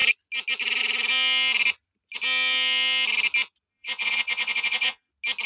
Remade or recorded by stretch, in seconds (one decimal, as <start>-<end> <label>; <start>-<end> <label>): 0.0-3.7 recorded; 3.7-5.1 remade; 5.1-5.5 recorded